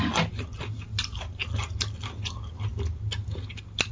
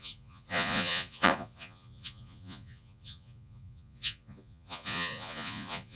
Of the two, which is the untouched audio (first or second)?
first